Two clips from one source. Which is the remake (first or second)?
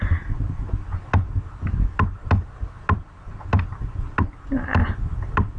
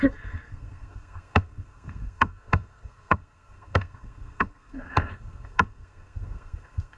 second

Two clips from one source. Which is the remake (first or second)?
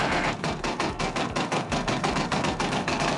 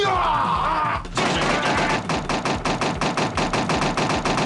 first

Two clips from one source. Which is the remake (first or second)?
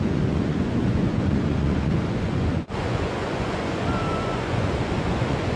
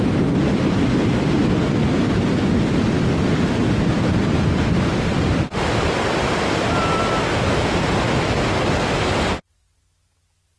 first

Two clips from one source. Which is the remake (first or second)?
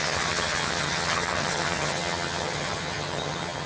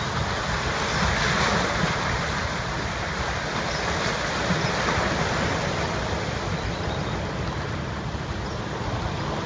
first